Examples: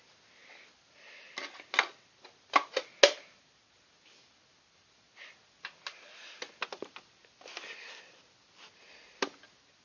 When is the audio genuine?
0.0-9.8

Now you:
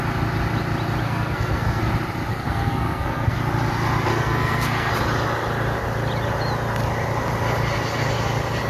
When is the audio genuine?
0.0-1.0; 1.8-2.3; 3.4-4.1; 4.9-8.7

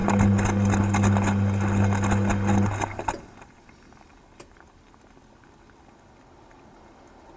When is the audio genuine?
0.0-7.4

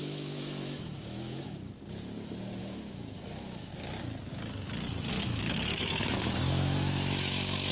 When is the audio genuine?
1.7-2.6; 3.7-5.1

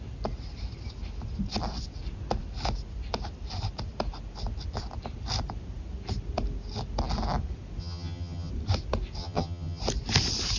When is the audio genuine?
0.0-7.8; 8.5-9.2; 9.8-10.6